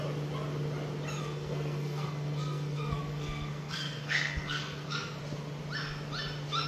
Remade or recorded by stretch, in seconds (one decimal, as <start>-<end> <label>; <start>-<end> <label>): 0.0-1.2 recorded; 1.2-5.2 remade; 5.2-6.7 recorded